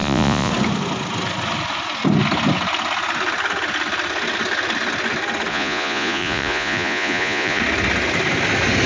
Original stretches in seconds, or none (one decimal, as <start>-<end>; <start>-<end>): 0.5-5.5; 7.6-8.9